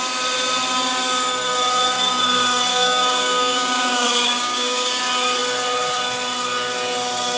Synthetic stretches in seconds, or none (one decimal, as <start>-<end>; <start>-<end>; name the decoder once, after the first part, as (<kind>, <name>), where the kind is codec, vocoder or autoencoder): 2.7-5.0 (codec, DAC)